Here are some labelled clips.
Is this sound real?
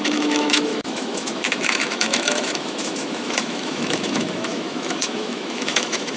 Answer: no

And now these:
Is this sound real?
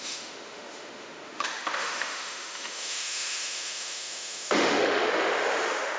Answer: no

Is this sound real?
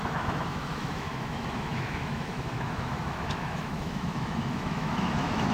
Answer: no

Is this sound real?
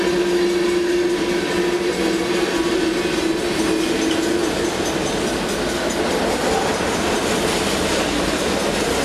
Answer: yes